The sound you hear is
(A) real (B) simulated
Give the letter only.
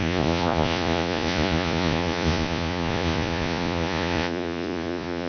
B